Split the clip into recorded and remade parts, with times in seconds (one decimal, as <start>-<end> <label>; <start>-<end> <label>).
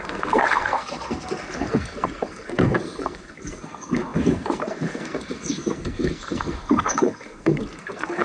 0.0-8.2 remade